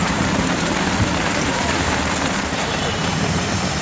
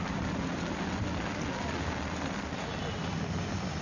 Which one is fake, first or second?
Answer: first